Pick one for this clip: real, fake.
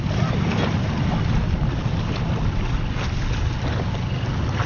real